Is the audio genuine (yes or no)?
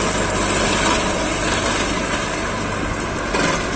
yes